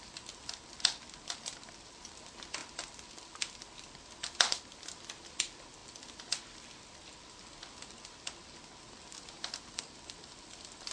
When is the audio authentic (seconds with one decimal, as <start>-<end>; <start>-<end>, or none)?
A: 0.0-10.9